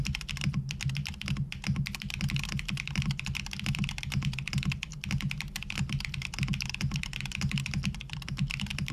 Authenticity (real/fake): real